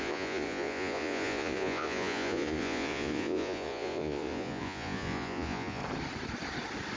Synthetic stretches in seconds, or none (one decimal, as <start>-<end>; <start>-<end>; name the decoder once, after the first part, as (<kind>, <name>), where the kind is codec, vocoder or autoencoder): 0.0-5.8 (vocoder, Vocos)